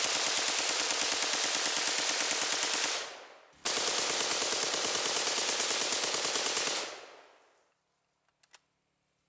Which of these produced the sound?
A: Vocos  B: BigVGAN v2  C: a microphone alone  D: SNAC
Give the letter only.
C